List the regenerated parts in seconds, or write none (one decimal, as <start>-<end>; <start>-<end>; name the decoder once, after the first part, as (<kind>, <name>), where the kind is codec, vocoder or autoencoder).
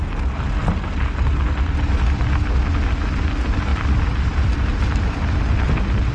3.7-5.4 (vocoder, BigVGAN v2)